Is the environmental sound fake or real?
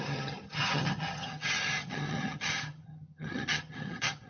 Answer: fake